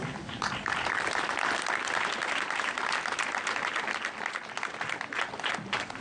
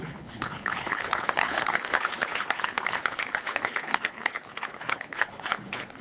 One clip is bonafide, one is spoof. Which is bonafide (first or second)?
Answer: first